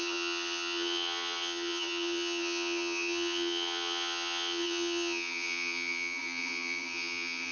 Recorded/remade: remade